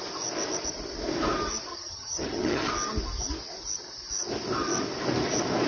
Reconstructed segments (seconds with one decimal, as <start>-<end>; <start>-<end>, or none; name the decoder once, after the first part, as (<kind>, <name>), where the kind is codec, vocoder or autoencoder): 1.7-2.7 (vocoder, HiFi-GAN)